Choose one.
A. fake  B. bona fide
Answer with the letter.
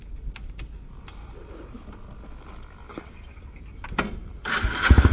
B